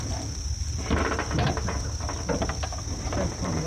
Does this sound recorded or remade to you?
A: recorded